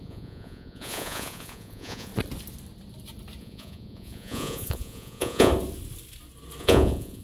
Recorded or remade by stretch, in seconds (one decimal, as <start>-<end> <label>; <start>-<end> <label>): 0.0-2.1 remade; 2.1-3.4 recorded; 3.4-5.5 remade; 5.5-6.6 recorded; 6.6-7.2 remade